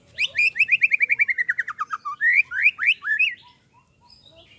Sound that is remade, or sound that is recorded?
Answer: recorded